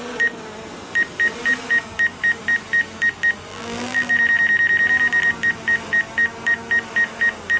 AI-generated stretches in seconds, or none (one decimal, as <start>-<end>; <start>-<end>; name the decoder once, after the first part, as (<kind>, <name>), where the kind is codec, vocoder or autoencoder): 3.5-4.1 (vocoder, BigVGAN v2)